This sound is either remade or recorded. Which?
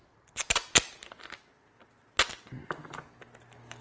recorded